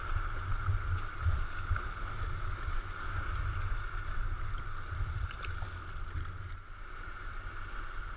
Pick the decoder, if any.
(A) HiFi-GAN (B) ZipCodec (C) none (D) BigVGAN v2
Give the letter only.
C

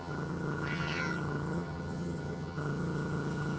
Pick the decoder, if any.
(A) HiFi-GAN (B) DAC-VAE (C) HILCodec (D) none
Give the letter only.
A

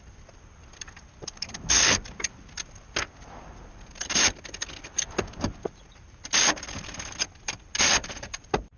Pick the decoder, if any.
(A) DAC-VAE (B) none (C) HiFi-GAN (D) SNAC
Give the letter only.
B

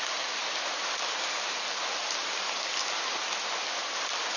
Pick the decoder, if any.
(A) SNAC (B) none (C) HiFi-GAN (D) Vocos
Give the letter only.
B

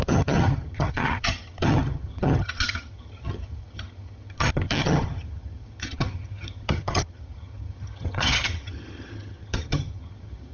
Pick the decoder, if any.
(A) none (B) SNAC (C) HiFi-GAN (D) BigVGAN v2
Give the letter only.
C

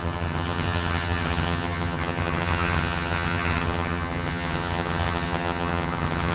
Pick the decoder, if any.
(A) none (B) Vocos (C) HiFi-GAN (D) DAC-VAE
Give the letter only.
C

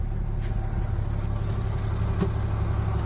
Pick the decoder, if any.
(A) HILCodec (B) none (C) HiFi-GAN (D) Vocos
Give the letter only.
B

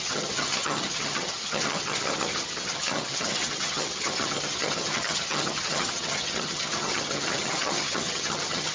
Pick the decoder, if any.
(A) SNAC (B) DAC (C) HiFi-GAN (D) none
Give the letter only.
C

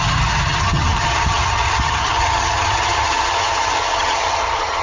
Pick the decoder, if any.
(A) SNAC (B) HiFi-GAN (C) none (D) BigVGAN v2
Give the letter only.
B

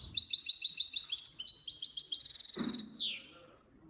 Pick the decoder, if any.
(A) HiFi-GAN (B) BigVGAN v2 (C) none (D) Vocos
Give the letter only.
C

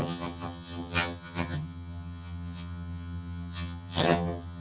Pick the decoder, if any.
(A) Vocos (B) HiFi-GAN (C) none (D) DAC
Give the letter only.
B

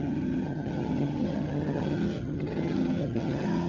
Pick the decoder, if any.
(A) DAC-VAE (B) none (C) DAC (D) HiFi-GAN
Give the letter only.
D